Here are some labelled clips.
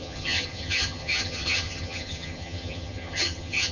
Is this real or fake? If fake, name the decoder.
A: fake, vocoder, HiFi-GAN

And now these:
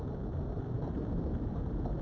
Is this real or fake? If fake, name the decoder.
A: real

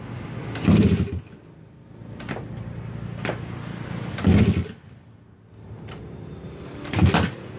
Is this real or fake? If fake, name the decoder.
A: real